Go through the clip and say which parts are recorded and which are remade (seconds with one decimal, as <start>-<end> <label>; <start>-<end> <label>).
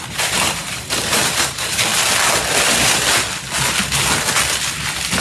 0.0-1.9 remade; 1.9-5.2 recorded